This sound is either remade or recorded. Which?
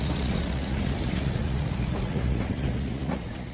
remade